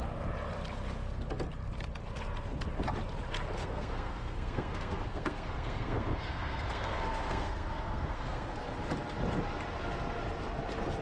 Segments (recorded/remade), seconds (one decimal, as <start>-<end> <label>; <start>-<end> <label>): 0.0-3.6 recorded; 3.6-8.6 remade; 8.6-11.0 recorded